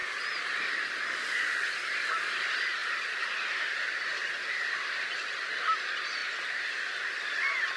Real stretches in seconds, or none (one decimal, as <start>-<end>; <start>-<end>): 0.0-7.8